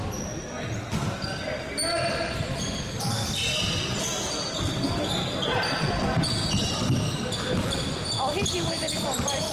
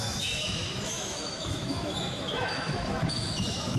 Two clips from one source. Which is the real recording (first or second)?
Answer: first